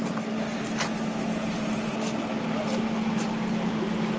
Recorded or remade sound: recorded